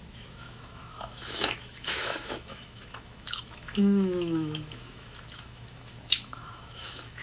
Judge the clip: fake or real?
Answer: fake